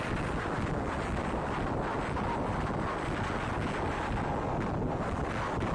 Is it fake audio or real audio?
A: real